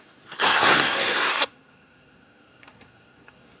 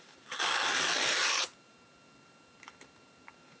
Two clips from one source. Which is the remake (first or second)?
first